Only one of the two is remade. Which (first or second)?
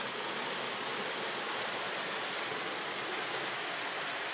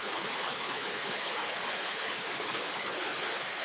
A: second